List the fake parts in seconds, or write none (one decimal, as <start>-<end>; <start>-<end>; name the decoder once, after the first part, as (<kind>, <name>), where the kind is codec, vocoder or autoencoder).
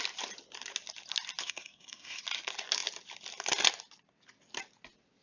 1.4-2.2 (codec, SNAC)